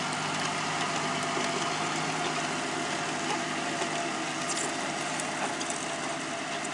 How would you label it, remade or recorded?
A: recorded